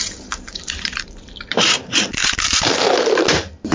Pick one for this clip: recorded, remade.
remade